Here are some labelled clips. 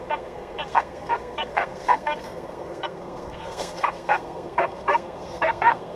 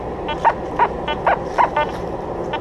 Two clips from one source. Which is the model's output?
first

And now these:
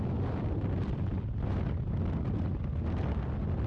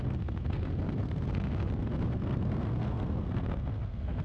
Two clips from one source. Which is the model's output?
second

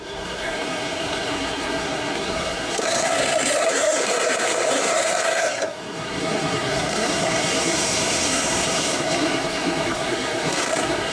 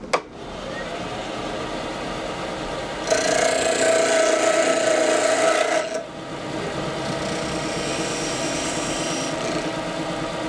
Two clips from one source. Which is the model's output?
first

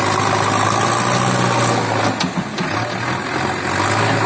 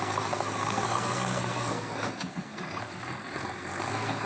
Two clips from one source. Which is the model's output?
second